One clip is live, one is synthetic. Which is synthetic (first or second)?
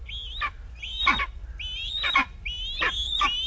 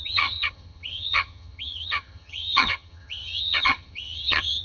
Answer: second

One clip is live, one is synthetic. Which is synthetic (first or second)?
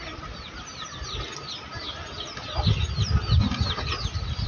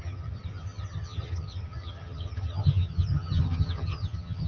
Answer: second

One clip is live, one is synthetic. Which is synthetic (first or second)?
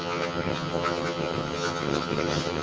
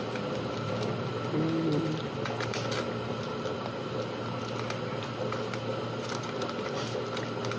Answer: first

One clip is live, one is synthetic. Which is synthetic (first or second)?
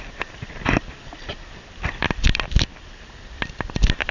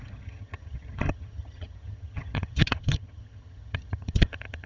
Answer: second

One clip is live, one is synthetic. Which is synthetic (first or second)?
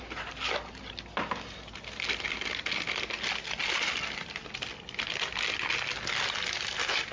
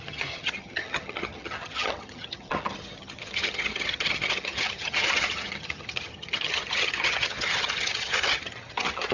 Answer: second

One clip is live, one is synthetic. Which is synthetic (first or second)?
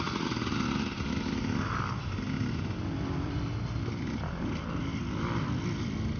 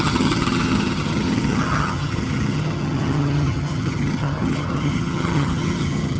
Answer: second